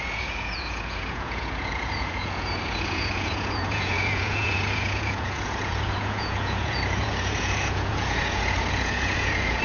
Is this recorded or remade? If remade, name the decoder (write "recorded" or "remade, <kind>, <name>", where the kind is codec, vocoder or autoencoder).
remade, vocoder, Vocos